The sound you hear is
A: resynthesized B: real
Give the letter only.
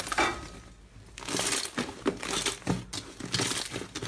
B